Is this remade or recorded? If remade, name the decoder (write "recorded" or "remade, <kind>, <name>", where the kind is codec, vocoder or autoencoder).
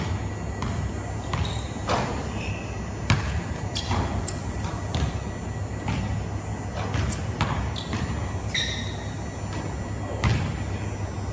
recorded